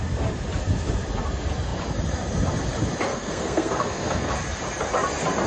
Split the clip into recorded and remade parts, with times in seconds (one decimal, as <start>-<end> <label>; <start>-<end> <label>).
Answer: 0.0-3.1 recorded; 3.1-4.3 remade; 4.3-5.5 recorded